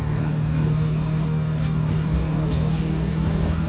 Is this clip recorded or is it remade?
remade